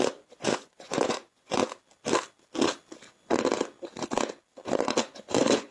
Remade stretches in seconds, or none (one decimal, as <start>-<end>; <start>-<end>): 0.0-1.6; 5.0-5.7